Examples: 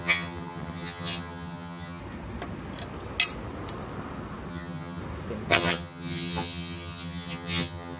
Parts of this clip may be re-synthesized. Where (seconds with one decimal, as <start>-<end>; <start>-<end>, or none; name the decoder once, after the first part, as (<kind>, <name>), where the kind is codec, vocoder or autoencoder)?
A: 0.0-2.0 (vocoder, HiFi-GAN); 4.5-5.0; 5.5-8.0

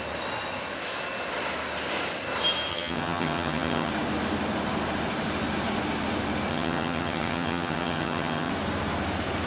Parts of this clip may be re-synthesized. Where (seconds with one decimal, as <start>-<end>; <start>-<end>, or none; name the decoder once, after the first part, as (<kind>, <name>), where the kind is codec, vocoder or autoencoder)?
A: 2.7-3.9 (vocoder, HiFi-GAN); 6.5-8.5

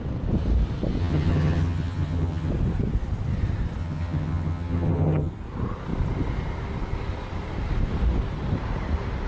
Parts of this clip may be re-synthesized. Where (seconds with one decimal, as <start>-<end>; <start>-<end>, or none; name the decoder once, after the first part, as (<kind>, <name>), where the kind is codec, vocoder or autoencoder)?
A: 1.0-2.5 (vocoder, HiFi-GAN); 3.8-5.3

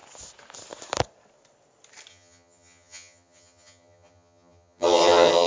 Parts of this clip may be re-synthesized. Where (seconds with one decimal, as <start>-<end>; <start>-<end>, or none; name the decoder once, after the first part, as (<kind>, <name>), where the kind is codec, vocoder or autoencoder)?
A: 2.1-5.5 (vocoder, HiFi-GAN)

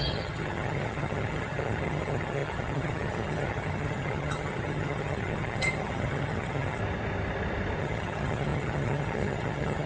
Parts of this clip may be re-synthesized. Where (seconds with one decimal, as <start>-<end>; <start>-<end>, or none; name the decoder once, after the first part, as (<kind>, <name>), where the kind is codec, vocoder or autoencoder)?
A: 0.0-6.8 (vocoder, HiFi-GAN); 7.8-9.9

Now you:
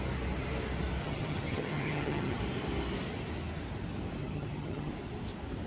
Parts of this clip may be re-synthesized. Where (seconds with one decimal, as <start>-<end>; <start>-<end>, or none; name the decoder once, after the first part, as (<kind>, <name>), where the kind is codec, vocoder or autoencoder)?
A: 1.0-2.4 (vocoder, HiFi-GAN); 4.2-4.9

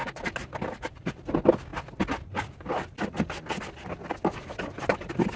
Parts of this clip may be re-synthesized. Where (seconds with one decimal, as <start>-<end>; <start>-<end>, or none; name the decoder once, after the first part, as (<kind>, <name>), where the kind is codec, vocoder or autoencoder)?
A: none

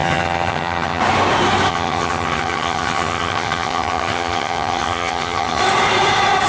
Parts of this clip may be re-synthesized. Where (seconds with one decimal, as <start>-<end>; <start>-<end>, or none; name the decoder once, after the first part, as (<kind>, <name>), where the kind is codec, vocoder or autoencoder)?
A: 0.0-1.0 (vocoder, HiFi-GAN); 1.7-5.6